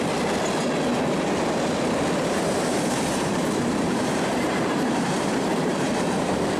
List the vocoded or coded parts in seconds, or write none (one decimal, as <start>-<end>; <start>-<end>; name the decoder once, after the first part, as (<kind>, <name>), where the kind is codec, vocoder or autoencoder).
2.2-6.6 (vocoder, BigVGAN v2)